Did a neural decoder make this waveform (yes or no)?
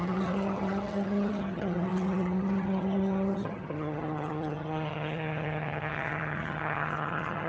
yes